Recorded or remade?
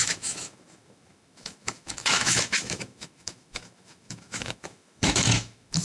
remade